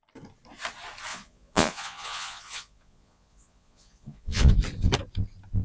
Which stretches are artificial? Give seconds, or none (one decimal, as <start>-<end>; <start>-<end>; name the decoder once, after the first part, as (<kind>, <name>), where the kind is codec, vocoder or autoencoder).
1.1-4.5 (vocoder, Vocos)